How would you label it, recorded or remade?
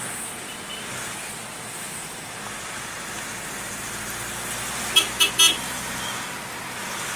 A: recorded